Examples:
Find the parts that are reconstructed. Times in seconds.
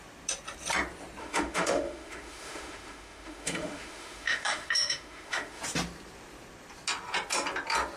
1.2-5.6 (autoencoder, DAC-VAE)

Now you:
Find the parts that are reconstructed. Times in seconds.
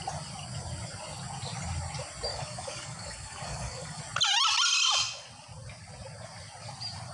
2.3-4.0 (codec, DAC)